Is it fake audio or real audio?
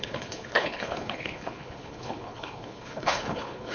fake